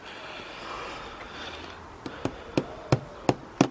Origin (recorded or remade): recorded